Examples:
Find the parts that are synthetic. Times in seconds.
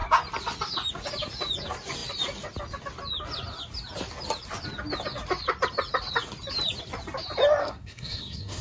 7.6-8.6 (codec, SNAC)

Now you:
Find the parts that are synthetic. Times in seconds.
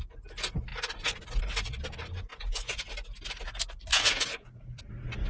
2.3-2.9 (vocoder, Vocos); 3.9-4.8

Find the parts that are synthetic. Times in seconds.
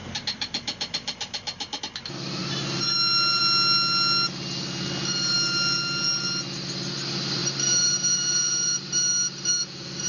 0.0-1.8 (vocoder, BigVGAN v2); 2.4-3.4; 7.4-10.1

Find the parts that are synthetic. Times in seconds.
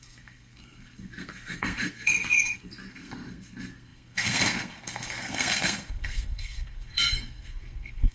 0.0-8.1 (codec, SNAC)